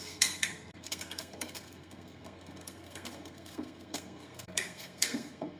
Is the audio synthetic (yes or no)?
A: yes